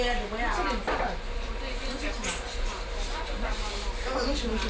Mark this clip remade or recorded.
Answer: recorded